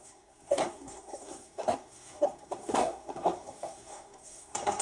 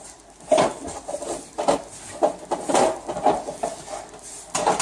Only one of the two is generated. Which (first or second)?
first